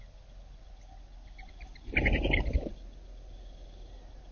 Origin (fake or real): real